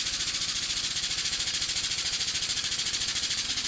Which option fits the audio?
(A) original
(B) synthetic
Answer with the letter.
B